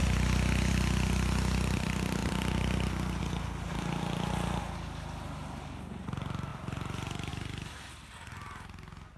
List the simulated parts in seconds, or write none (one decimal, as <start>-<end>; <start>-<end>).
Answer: none